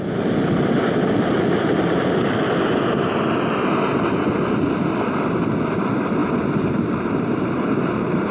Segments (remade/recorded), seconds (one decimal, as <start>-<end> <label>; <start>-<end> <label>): 0.0-6.2 recorded; 6.2-8.3 remade